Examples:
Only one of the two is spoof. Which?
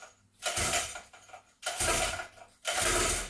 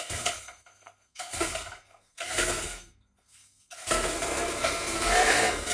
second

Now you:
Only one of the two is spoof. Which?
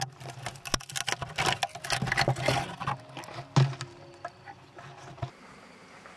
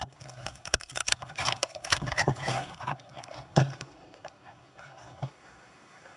second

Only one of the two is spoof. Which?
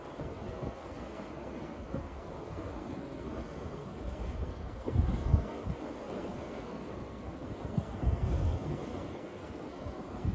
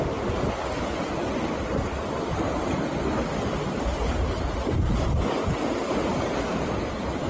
first